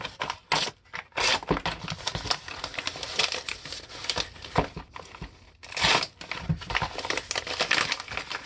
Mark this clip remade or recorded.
recorded